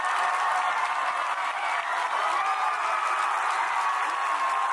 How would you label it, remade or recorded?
recorded